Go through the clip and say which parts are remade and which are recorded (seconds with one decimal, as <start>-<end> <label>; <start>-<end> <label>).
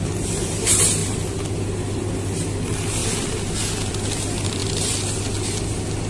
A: 0.0-6.1 recorded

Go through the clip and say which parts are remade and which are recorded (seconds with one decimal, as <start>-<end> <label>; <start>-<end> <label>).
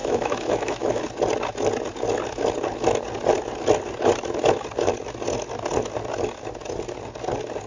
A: 0.0-1.0 remade; 1.0-7.7 recorded